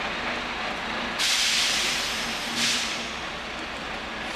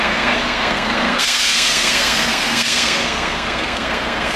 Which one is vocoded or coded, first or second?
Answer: second